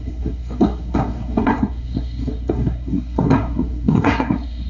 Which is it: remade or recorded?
remade